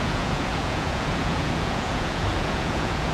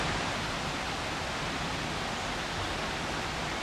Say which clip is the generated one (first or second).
first